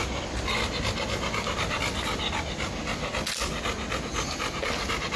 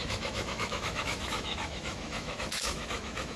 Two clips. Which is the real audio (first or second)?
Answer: first